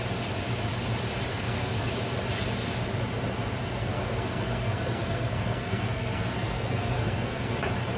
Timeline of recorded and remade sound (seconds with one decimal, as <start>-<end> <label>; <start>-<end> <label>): 0.0-1.3 recorded; 1.3-1.9 remade; 1.9-3.8 recorded; 3.8-7.6 remade; 7.6-8.0 recorded